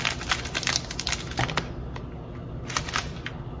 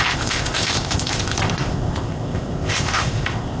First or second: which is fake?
second